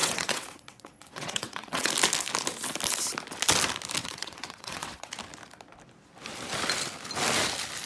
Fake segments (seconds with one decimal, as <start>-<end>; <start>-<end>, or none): 0.0-1.9; 4.0-5.1